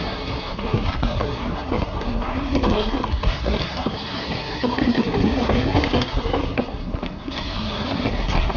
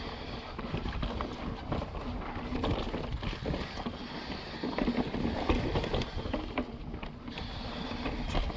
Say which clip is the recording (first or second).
second